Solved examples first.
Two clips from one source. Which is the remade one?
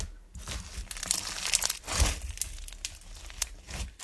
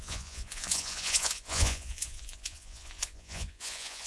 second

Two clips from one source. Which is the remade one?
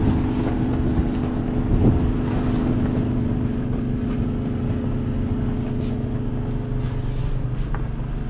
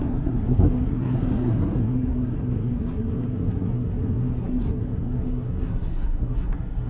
second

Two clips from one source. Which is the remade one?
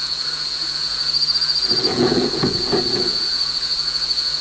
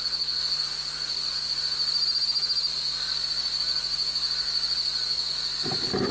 first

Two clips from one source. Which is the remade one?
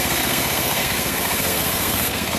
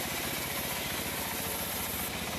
first